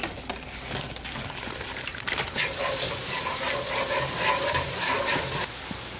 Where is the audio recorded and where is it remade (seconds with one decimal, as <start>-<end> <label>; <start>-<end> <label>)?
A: 0.0-1.9 recorded; 1.9-5.5 remade; 5.5-6.0 recorded